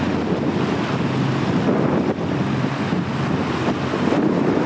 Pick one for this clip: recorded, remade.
recorded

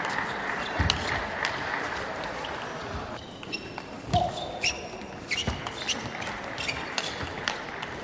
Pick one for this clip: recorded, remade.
recorded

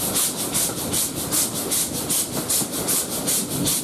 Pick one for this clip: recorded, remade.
recorded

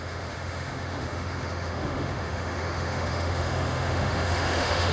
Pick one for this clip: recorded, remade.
remade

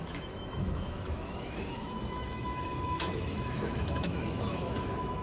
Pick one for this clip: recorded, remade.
remade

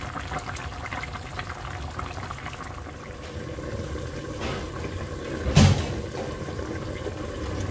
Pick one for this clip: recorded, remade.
recorded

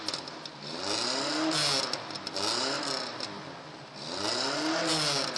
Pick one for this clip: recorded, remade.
recorded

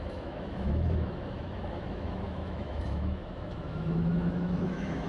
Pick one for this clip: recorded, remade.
remade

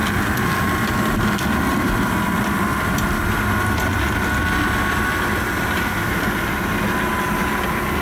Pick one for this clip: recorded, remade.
recorded